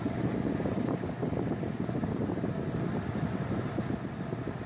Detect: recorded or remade recorded